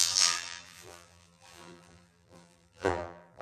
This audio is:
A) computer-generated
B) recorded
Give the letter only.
A